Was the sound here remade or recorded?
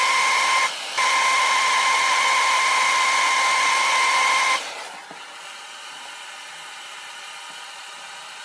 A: recorded